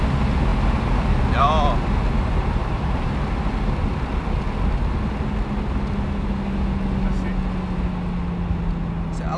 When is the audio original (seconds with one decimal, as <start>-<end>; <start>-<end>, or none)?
0.0-2.6; 3.3-9.4